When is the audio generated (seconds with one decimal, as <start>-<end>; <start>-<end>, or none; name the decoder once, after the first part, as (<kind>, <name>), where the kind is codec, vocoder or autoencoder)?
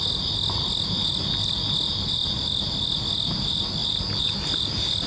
none